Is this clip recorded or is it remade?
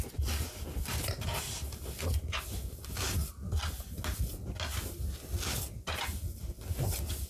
recorded